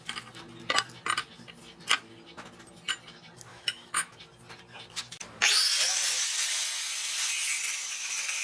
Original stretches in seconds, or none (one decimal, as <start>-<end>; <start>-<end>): 0.0-3.5; 4.2-8.4